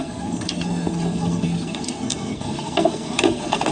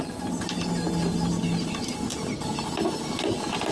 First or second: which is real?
second